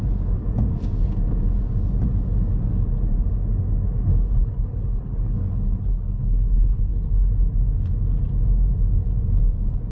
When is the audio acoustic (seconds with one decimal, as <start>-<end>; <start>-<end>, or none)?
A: 0.0-4.4; 7.3-9.9